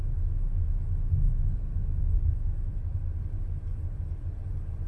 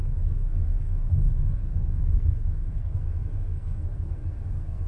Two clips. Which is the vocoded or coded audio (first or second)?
second